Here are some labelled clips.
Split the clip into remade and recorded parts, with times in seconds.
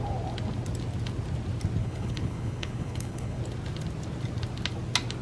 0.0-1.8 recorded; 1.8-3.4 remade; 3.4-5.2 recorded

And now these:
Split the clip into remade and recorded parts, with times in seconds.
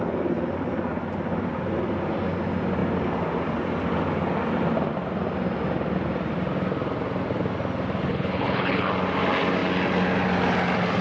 0.0-8.1 recorded; 8.1-8.9 remade; 8.9-11.0 recorded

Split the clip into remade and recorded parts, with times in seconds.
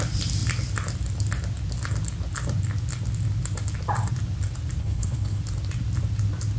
0.0-4.8 recorded; 4.8-5.4 remade; 5.4-6.6 recorded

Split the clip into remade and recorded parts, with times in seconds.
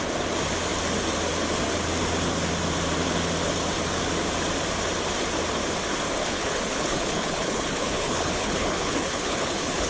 0.0-6.2 recorded; 6.2-9.9 remade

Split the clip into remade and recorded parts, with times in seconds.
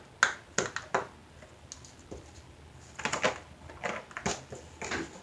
0.0-5.2 recorded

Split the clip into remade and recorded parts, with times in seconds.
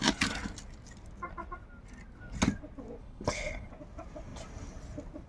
0.0-3.0 recorded; 3.0-3.7 remade; 3.7-5.3 recorded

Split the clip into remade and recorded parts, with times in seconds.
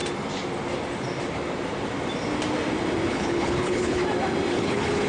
0.0-3.1 recorded; 3.1-4.0 remade; 4.0-4.5 recorded; 4.5-5.1 remade